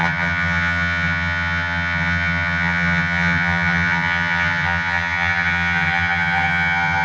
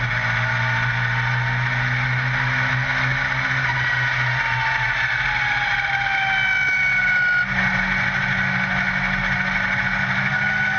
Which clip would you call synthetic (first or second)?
first